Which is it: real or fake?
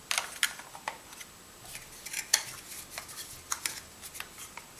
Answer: real